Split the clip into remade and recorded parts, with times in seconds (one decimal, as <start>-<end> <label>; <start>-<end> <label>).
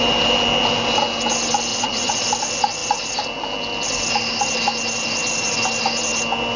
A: 0.0-1.7 recorded; 1.7-2.2 remade; 2.2-6.6 recorded